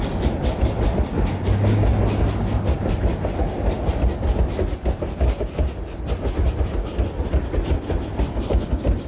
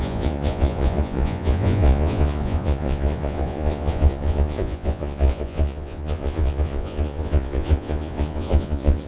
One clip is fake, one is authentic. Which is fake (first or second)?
second